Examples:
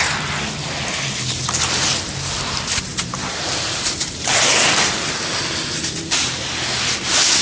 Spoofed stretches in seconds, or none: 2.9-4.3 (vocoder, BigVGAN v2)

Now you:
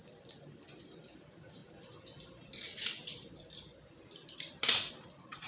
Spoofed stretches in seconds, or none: 0.8-1.6 (vocoder, BigVGAN v2); 4.9-5.5

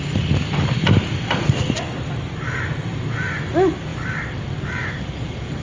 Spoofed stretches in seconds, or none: 2.9-3.5 (vocoder, BigVGAN v2)

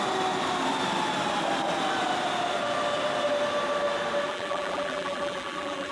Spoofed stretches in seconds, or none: 4.3-5.9 (vocoder, BigVGAN v2)

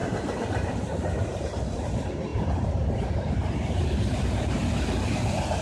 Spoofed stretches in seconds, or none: 0.0-4.6 (vocoder, BigVGAN v2)

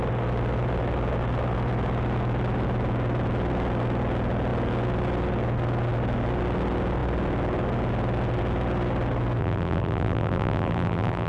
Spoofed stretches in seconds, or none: 9.4-11.3 (vocoder, BigVGAN v2)

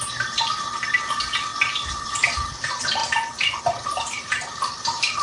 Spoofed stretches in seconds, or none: 0.0-1.5 (vocoder, BigVGAN v2); 2.0-5.2

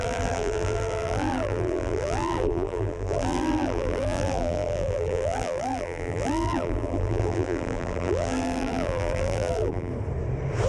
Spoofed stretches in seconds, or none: 0.0-9.9 (vocoder, BigVGAN v2)